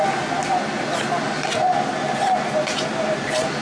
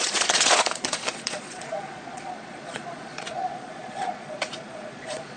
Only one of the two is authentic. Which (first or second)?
first